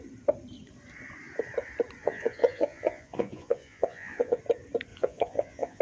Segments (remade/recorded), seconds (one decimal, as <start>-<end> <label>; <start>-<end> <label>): 0.0-2.0 recorded; 2.0-4.4 remade; 4.4-4.9 recorded; 4.9-5.8 remade